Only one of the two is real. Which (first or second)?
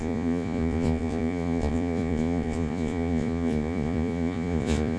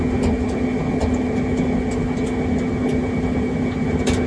second